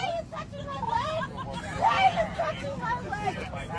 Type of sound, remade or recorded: recorded